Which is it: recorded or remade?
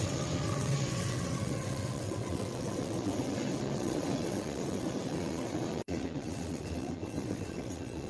remade